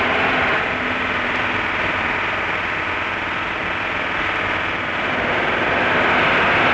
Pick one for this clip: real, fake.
real